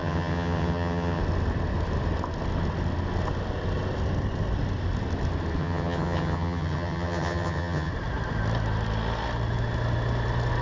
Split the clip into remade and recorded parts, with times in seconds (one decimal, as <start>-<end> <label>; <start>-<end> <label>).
0.0-1.2 remade; 1.2-5.6 recorded; 5.6-7.9 remade; 7.9-10.6 recorded